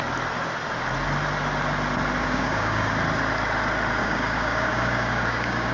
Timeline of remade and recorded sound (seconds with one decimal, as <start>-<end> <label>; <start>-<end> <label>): 0.0-2.2 recorded; 2.2-2.9 remade; 2.9-4.0 recorded; 4.0-5.7 remade